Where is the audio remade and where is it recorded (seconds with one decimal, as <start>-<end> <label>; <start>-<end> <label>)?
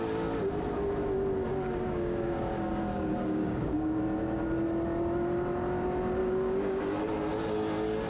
0.0-1.5 recorded; 1.5-4.0 remade; 4.0-6.2 recorded; 6.2-6.8 remade; 6.8-8.1 recorded